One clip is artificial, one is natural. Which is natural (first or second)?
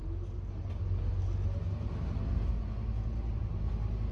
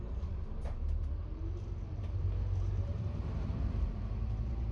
first